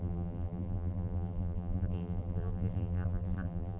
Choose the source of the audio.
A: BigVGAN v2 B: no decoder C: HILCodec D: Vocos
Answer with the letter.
A